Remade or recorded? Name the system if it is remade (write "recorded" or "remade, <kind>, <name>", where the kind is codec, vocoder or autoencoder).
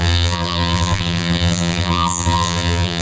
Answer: remade, vocoder, BigVGAN v2